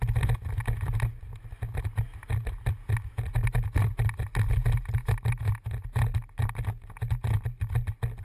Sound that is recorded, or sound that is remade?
recorded